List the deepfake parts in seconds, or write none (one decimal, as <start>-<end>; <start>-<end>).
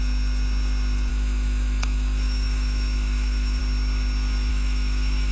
1.1-3.6; 4.5-5.3